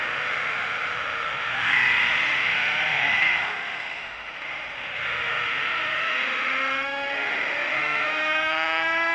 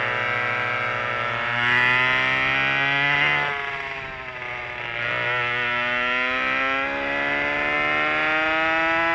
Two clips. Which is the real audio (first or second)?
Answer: second